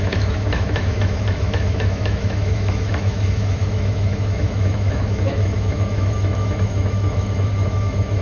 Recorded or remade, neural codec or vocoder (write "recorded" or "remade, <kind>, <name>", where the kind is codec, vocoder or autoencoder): remade, autoencoder, DAC-VAE